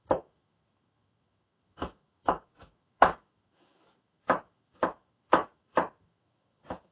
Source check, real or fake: fake